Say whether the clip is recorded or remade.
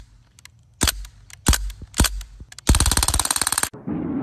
recorded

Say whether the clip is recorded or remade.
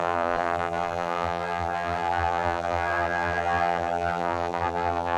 remade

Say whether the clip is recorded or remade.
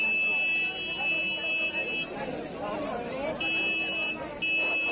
recorded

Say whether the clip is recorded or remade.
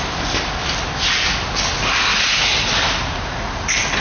recorded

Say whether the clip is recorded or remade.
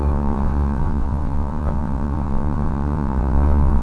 remade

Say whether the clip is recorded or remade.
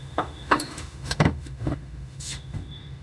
remade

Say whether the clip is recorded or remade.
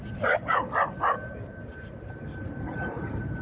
recorded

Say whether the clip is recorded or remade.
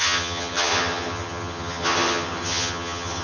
remade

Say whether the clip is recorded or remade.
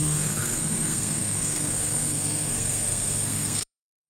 remade